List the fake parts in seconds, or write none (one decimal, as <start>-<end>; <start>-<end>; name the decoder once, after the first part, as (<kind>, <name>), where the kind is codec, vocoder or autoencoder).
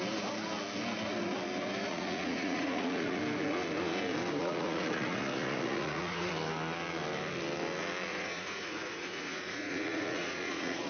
1.9-3.2 (vocoder, Vocos); 4.4-6.3; 8.1-10.9